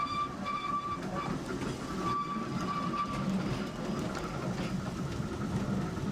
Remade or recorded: recorded